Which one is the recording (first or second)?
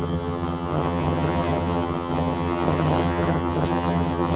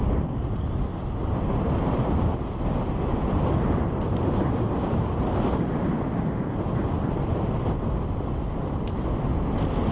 second